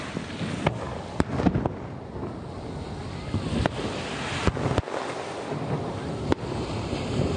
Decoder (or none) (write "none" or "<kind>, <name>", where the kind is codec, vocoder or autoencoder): none